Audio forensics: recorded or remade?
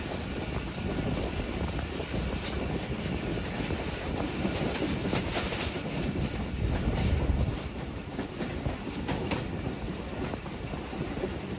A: recorded